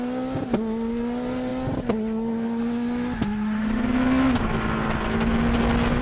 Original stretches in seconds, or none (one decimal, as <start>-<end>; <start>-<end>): 0.0-6.0